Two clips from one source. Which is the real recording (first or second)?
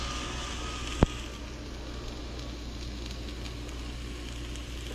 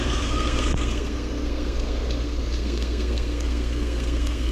first